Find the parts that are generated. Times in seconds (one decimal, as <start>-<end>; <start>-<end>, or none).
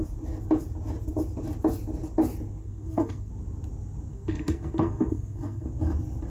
2.6-3.3; 4.1-5.7